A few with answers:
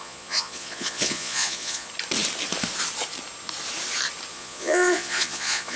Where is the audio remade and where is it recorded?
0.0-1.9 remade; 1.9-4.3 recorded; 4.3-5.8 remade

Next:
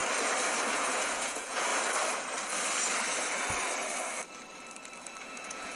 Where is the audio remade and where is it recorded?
0.0-0.7 recorded; 0.7-1.7 remade; 1.7-5.2 recorded; 5.2-5.8 remade

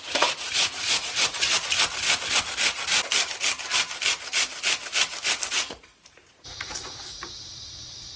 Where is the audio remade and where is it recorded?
0.0-1.3 remade; 1.3-5.5 recorded; 5.5-8.2 remade

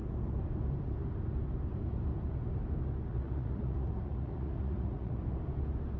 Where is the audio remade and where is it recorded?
0.0-3.1 recorded; 3.1-5.2 remade; 5.2-6.0 recorded